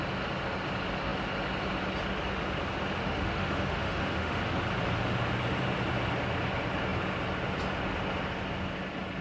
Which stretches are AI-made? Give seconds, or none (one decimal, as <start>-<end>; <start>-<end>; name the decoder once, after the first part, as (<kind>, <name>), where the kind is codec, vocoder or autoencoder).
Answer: 3.0-4.4 (autoencoder, DAC-VAE)